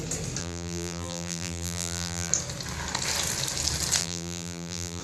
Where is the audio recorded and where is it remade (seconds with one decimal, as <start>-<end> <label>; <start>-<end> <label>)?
0.0-0.4 recorded; 0.4-2.3 remade; 2.3-4.0 recorded; 4.0-5.0 remade